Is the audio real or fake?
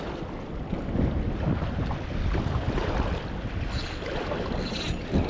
real